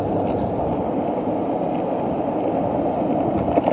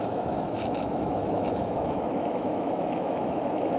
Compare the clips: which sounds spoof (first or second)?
second